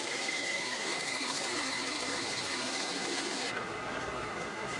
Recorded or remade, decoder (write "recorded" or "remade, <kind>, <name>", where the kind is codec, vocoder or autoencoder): remade, codec, SNAC